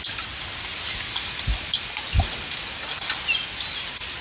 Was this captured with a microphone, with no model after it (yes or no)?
yes